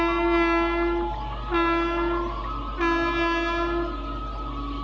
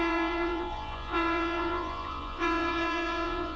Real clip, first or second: first